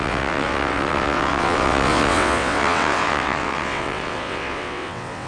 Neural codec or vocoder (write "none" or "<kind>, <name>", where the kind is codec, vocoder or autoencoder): vocoder, WaveNeXt